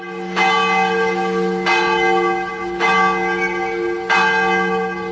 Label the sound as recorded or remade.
recorded